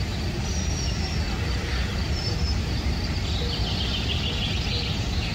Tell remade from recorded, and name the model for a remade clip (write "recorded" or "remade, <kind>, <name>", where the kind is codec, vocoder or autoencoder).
recorded